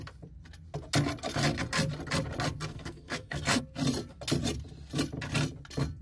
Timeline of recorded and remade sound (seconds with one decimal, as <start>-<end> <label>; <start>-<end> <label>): 0.0-2.7 recorded; 2.7-3.6 remade; 3.6-6.0 recorded